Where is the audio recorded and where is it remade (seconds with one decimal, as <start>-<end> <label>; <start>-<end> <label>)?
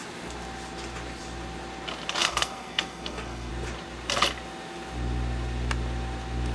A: 0.0-2.2 recorded; 2.2-3.5 remade; 3.5-6.5 recorded